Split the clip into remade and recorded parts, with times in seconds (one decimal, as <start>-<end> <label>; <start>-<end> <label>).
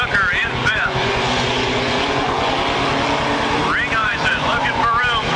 0.0-0.4 recorded; 0.4-2.5 remade; 2.5-4.0 recorded; 4.0-4.8 remade; 4.8-5.4 recorded